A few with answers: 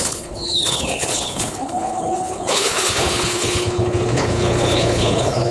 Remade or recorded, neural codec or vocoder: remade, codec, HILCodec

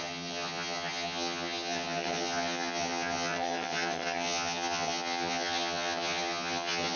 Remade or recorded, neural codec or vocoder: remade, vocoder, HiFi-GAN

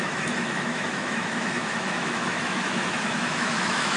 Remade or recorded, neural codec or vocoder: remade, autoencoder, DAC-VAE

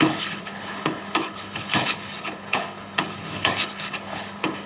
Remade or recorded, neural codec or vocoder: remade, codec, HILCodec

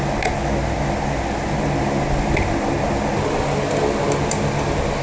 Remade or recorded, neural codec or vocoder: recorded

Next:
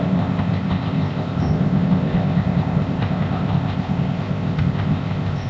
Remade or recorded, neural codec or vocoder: remade, codec, ZipCodec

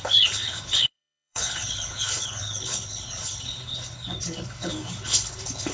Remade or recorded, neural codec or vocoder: remade, codec, HILCodec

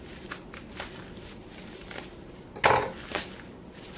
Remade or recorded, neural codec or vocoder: recorded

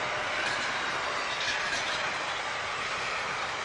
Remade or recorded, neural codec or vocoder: recorded